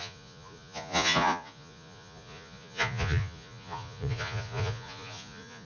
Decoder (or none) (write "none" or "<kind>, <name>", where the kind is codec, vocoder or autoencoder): vocoder, Vocos